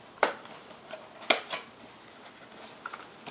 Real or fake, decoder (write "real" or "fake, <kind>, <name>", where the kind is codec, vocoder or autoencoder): real